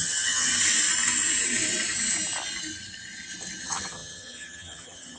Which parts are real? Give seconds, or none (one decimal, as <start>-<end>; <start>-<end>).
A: 0.5-3.6